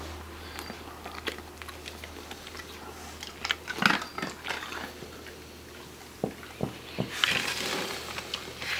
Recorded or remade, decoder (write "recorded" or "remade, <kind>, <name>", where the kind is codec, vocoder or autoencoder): recorded